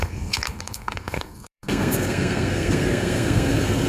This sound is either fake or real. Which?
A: fake